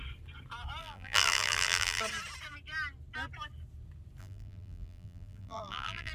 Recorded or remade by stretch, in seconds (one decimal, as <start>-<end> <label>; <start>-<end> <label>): 0.0-0.8 recorded; 0.8-2.0 remade; 2.0-4.2 recorded; 4.2-6.1 remade